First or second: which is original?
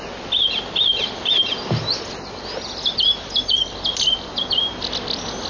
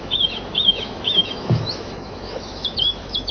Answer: first